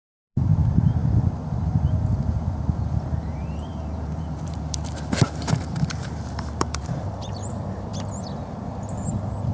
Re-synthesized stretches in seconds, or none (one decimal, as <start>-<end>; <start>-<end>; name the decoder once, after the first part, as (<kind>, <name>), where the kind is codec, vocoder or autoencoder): 0.0-0.5 (vocoder, BigVGAN v2); 3.0-7.9